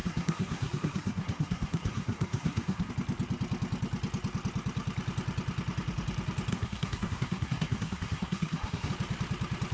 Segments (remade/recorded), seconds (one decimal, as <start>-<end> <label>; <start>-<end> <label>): 0.0-2.9 remade; 2.9-6.5 recorded; 6.5-8.9 remade; 8.9-9.7 recorded